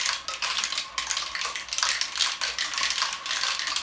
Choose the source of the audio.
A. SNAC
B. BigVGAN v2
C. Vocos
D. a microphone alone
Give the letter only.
D